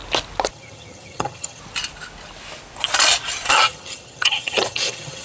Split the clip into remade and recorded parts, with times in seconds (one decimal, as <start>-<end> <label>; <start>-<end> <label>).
0.0-0.5 recorded; 0.5-1.6 remade; 1.6-3.5 recorded; 3.5-5.2 remade